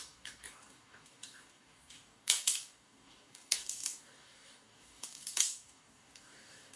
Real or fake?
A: fake